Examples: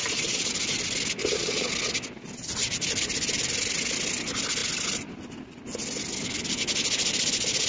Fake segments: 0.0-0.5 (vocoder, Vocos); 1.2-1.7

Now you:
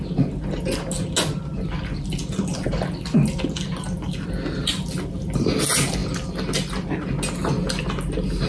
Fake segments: none

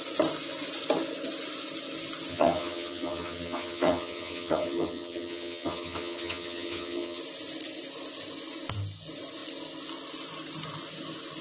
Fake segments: 2.3-7.2 (vocoder, HiFi-GAN)

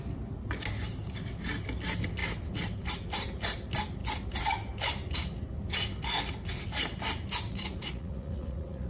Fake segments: 7.5-8.9 (vocoder, Vocos)

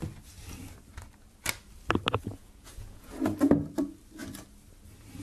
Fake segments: 2.3-3.1 (vocoder, Vocos)

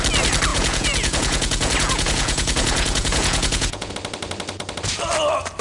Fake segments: 0.5-3.9 (vocoder, Vocos)